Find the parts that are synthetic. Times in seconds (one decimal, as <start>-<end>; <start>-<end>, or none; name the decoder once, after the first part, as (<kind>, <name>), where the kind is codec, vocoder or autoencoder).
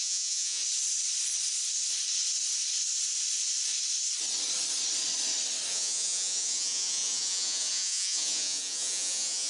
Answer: 0.0-0.6 (vocoder, Vocos); 5.7-9.5